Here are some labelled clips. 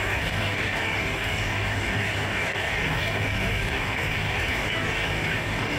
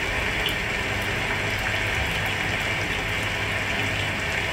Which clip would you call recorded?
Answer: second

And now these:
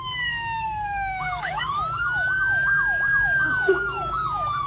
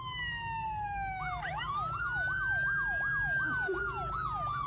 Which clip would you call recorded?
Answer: second